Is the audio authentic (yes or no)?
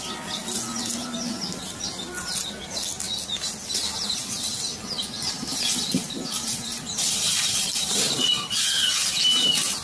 yes